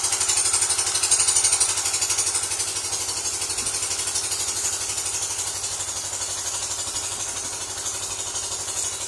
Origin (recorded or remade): recorded